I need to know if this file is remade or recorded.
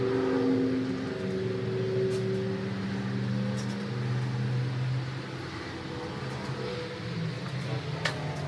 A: recorded